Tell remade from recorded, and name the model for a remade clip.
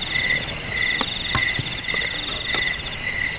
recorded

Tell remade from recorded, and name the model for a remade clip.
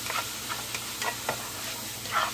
recorded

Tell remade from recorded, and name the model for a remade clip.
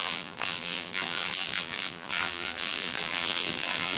remade, vocoder, BigVGAN v2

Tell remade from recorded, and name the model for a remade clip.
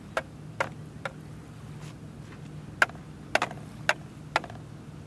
recorded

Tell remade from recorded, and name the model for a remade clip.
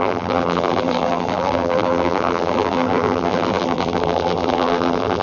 remade, vocoder, BigVGAN v2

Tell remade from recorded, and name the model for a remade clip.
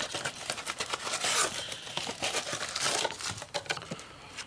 remade, vocoder, BigVGAN v2